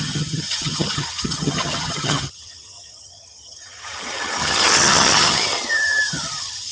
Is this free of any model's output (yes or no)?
no